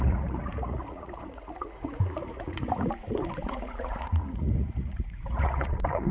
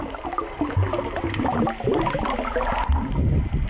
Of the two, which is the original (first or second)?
second